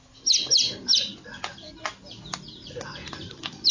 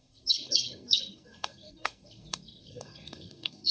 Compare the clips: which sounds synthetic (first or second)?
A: second